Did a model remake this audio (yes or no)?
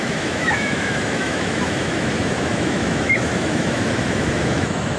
yes